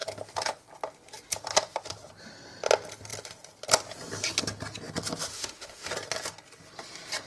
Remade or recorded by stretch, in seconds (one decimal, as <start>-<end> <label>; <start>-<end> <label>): 0.0-5.3 recorded; 5.3-5.9 remade; 5.9-7.3 recorded